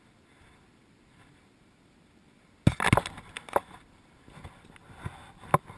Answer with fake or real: real